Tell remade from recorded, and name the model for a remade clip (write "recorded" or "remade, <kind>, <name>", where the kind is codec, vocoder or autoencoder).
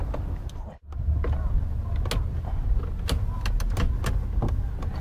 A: recorded